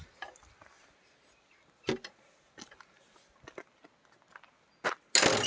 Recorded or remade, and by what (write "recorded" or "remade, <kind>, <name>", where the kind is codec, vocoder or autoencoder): recorded